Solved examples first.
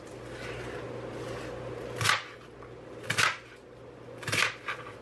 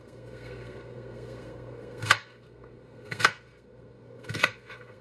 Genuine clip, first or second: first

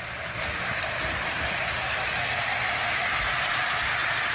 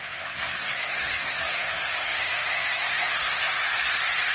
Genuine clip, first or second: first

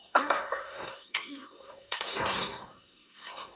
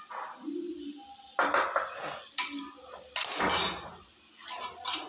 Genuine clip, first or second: second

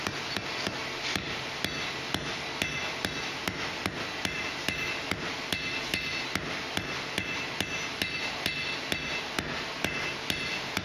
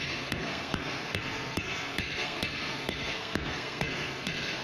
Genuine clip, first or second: first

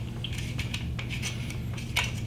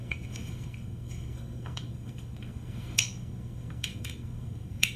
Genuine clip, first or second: first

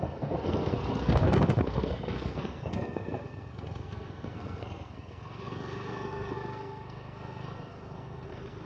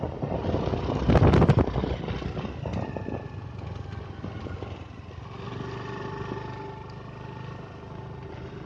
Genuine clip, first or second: second